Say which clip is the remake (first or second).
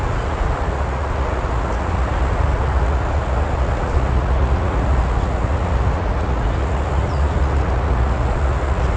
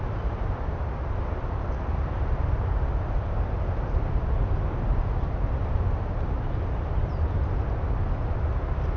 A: first